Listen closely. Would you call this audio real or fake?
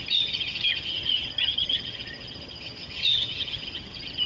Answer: fake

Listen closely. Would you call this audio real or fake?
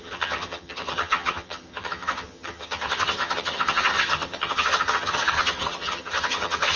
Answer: fake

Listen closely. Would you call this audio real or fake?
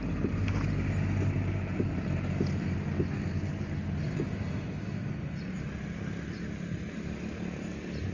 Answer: real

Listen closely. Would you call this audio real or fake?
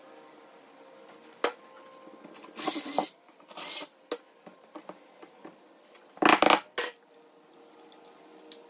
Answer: real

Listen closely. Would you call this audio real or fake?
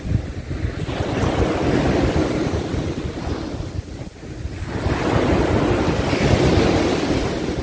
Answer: real